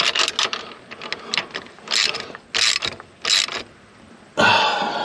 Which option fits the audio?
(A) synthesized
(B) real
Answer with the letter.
B